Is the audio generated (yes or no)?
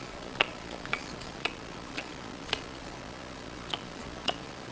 yes